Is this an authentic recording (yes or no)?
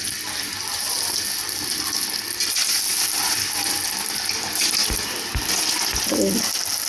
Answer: yes